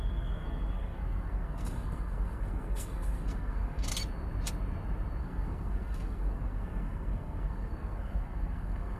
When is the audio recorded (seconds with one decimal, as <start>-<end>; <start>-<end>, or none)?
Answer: 3.9-5.2